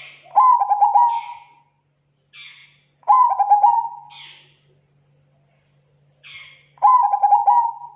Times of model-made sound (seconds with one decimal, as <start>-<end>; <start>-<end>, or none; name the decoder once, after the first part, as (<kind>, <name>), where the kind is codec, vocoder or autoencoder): none